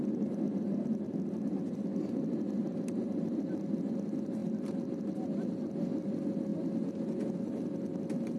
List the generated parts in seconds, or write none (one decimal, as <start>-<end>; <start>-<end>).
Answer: 2.6-3.9